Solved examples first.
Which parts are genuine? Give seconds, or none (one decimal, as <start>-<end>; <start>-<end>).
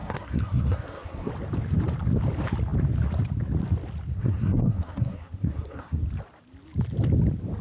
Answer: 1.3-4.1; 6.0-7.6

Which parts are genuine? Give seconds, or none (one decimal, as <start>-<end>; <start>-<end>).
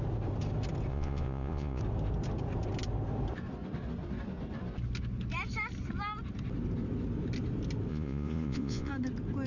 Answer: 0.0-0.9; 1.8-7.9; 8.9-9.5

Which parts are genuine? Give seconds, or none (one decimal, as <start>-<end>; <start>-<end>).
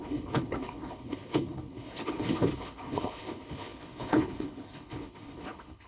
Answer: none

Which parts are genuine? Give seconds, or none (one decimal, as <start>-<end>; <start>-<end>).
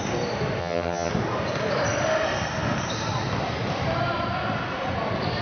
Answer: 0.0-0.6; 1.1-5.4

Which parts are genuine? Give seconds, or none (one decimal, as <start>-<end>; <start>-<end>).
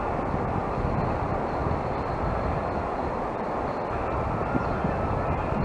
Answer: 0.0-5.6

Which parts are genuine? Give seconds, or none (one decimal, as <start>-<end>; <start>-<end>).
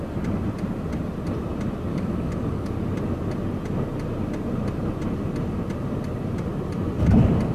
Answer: 0.0-1.9; 2.7-7.5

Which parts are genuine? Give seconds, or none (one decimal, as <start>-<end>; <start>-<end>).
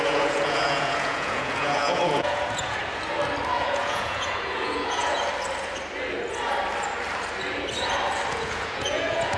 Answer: 2.8-3.6; 5.3-8.3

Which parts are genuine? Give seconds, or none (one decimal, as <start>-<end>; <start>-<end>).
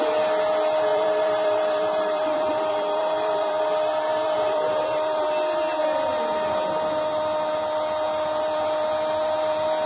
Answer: 0.0-0.9; 3.6-4.1; 5.3-9.9